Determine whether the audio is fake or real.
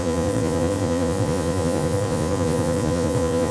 fake